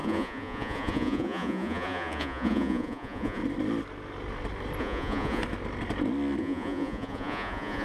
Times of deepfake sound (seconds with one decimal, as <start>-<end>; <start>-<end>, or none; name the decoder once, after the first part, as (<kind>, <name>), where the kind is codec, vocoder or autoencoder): 0.0-3.4 (vocoder, Vocos); 4.8-5.4; 6.4-7.8